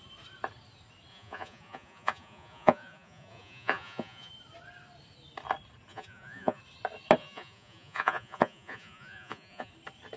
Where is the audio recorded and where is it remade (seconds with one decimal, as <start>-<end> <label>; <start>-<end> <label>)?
0.0-1.1 recorded; 1.1-4.3 remade; 4.3-5.9 recorded; 5.9-6.6 remade; 6.6-7.2 recorded; 7.2-9.7 remade; 9.7-10.2 recorded